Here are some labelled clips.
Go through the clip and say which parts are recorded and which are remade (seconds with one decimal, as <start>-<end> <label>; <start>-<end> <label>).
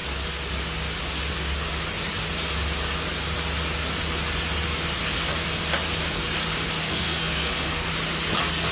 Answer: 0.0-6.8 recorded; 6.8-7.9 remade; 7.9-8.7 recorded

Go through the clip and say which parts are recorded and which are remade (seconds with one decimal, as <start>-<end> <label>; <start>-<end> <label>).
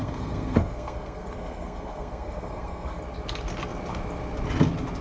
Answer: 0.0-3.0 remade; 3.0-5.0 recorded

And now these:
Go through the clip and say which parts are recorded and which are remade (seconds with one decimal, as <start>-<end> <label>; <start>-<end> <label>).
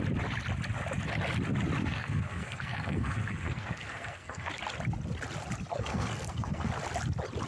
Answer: 0.0-1.8 recorded; 1.8-4.5 remade; 4.5-5.7 recorded; 5.7-6.7 remade; 6.7-7.5 recorded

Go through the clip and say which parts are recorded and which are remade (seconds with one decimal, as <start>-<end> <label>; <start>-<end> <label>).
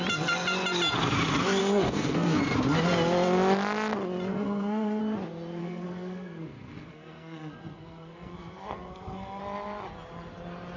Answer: 0.0-1.6 recorded; 1.6-2.4 remade; 2.4-4.3 recorded; 4.3-5.0 remade; 5.0-5.6 recorded; 5.6-9.4 remade; 9.4-10.8 recorded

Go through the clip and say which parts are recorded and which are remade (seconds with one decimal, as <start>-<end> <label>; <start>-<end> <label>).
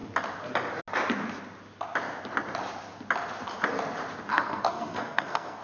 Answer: 0.0-4.3 recorded; 4.3-5.6 remade